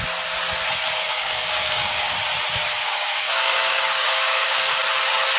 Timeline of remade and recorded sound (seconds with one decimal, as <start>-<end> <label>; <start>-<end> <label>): 0.0-1.1 recorded; 1.1-2.2 remade; 2.2-2.8 recorded; 2.8-4.8 remade; 4.8-5.4 recorded